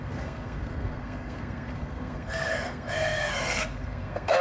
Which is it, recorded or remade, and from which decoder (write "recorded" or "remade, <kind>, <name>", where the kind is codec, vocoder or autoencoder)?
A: remade, codec, SNAC